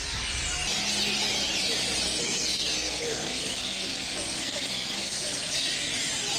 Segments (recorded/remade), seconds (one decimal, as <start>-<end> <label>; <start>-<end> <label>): 0.0-2.1 recorded; 2.1-5.9 remade; 5.9-6.4 recorded